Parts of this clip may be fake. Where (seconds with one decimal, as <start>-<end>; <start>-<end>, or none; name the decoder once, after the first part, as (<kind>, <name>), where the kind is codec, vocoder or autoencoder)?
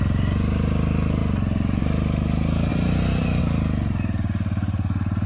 2.7-3.4 (vocoder, BigVGAN v2)